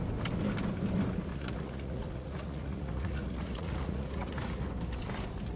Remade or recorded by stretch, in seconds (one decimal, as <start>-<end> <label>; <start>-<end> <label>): 0.0-1.3 recorded; 1.3-4.7 remade; 4.7-5.6 recorded

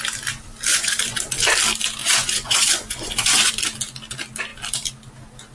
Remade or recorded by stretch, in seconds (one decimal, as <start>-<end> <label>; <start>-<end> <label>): 0.0-0.7 recorded; 0.7-1.2 remade; 1.2-2.0 recorded; 2.0-3.5 remade; 3.5-5.5 recorded

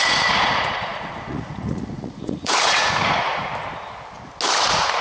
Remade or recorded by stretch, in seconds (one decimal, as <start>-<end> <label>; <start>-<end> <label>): 0.0-3.5 remade; 3.5-4.6 recorded; 4.6-5.0 remade

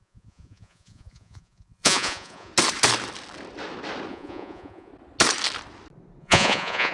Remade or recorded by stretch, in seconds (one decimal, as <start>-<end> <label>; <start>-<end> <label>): 0.0-2.5 remade; 2.5-4.1 recorded; 4.1-4.9 remade; 4.9-6.2 recorded; 6.2-6.9 remade